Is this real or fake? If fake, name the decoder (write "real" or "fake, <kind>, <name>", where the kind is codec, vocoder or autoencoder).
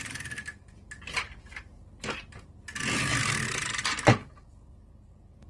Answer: real